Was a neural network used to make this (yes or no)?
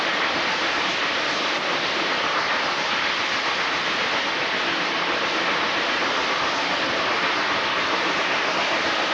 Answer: no